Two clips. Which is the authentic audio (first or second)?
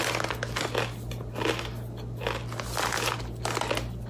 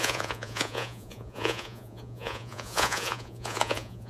first